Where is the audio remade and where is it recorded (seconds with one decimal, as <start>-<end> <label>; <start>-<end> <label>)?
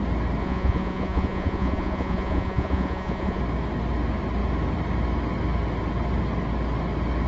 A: 0.0-0.4 recorded; 0.4-3.4 remade; 3.4-7.3 recorded